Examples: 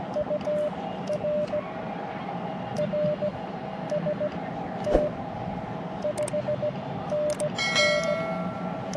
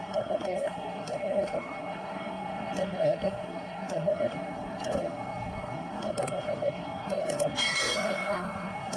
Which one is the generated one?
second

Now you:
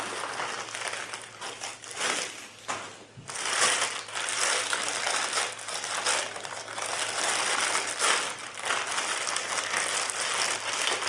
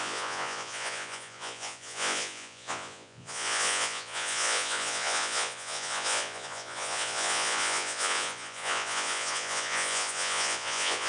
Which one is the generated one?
second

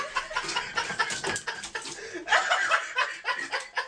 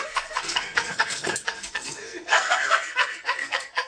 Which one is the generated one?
second